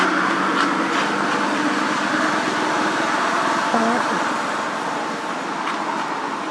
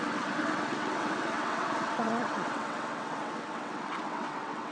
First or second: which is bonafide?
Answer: first